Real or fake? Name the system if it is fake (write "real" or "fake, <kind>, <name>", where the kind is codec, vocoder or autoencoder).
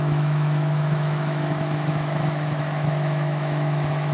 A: fake, autoencoder, DAC-VAE